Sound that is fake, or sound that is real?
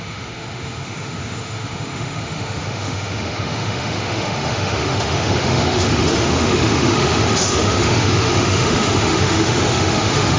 fake